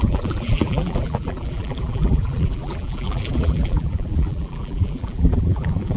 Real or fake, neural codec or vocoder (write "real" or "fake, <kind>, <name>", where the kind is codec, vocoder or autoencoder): fake, vocoder, BigVGAN v2